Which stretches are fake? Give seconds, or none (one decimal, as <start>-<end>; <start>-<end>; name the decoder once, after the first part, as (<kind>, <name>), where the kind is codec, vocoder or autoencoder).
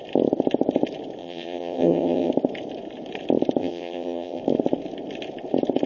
1.2-2.3 (vocoder, HiFi-GAN); 3.6-4.4